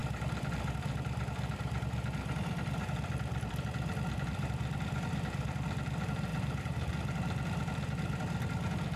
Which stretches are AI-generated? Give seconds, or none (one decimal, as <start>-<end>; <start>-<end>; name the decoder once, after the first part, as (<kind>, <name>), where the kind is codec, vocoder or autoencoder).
6.3-6.9 (vocoder, BigVGAN v2)